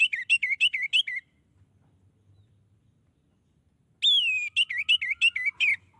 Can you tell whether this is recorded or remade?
recorded